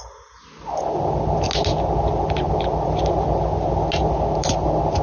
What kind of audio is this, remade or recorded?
recorded